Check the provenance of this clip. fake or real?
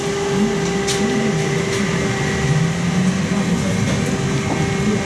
real